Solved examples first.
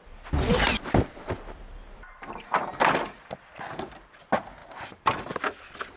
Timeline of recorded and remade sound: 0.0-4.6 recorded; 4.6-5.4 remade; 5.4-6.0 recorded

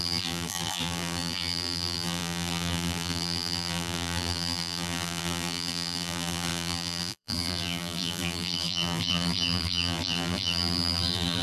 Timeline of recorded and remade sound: 0.0-11.4 remade

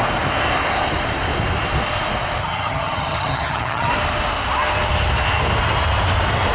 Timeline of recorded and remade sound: 0.0-2.4 recorded; 2.4-3.9 remade; 3.9-6.5 recorded

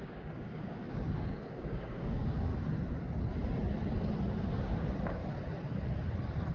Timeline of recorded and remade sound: 0.0-2.5 remade; 2.5-4.6 recorded; 4.6-5.2 remade; 5.2-6.5 recorded

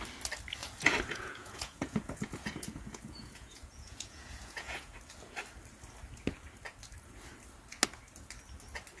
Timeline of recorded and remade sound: 0.0-0.6 recorded; 0.6-5.0 remade; 5.0-9.0 recorded

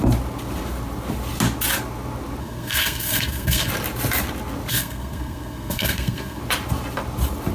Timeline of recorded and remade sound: 0.0-2.4 recorded; 2.4-3.7 remade; 3.7-4.7 recorded; 4.7-6.4 remade; 6.4-7.5 recorded

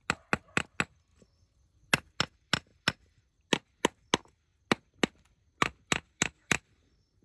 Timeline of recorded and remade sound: 0.0-7.2 recorded

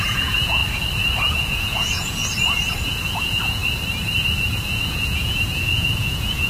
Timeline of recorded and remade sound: 0.0-0.6 remade; 0.6-1.3 recorded; 1.3-2.2 remade; 2.2-3.2 recorded; 3.2-3.6 remade; 3.6-4.7 recorded; 4.7-6.5 remade